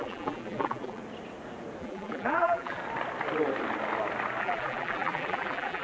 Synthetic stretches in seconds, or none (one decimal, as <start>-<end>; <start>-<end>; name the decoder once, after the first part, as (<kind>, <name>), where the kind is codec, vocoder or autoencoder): 0.0-1.0 (vocoder, BigVGAN v2); 1.8-2.8; 4.4-5.8